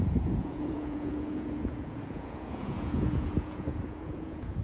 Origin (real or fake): fake